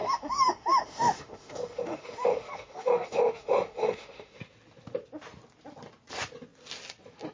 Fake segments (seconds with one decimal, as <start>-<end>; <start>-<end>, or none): 0.0-4.4